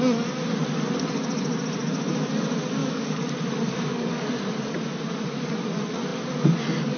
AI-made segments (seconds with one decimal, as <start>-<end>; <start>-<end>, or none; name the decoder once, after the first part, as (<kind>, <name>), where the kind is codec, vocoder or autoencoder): 2.8-3.3 (codec, DAC); 3.7-4.3